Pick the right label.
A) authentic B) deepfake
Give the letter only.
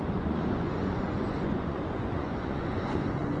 B